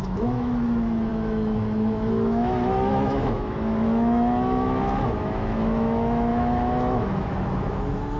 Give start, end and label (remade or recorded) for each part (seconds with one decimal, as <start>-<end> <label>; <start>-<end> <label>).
0.0-8.2 remade